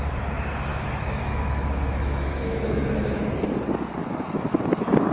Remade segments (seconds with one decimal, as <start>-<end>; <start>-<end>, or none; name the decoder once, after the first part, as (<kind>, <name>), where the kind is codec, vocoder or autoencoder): 0.7-3.2 (autoencoder, DAC-VAE); 4.0-4.6